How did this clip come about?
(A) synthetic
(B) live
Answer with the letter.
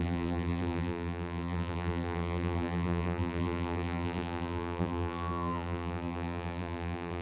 A